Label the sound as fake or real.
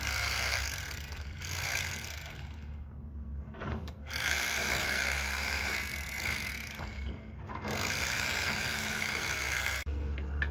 fake